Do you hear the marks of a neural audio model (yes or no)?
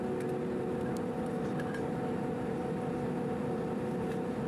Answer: no